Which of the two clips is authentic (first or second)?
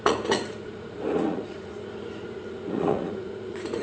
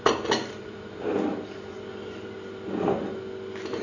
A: second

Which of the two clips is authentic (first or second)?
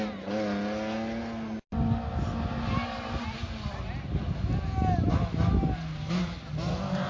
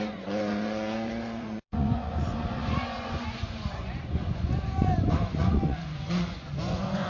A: first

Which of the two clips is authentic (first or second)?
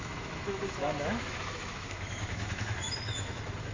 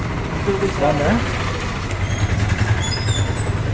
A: second